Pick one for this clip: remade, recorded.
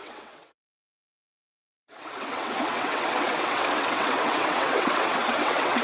remade